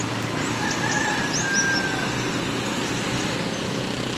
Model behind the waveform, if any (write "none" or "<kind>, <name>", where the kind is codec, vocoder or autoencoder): none